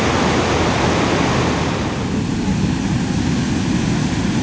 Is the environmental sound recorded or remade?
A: recorded